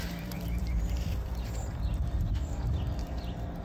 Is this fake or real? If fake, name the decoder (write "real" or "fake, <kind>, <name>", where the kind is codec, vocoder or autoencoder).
fake, vocoder, BigVGAN v2